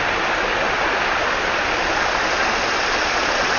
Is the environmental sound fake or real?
real